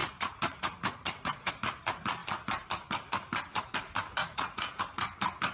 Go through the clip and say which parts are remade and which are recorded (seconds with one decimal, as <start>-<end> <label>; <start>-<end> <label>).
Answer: 0.0-1.5 remade; 1.5-4.2 recorded; 4.2-4.8 remade; 4.8-5.5 recorded